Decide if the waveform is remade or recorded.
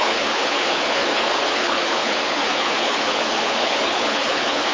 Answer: remade